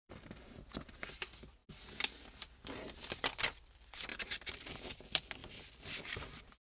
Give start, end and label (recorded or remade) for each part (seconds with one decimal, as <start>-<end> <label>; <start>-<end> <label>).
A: 0.0-1.6 remade; 1.6-2.4 recorded; 2.4-6.7 remade